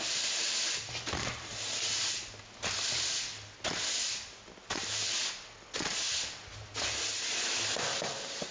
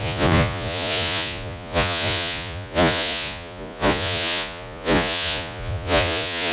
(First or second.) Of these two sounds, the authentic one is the first